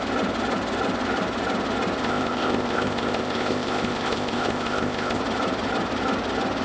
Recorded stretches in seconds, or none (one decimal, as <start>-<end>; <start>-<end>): 0.0-2.0; 5.2-6.6